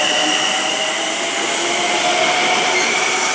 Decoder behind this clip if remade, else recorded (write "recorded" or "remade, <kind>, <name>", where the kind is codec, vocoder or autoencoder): recorded